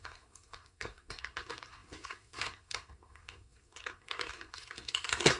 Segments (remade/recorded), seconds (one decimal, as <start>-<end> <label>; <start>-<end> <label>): 0.0-5.4 remade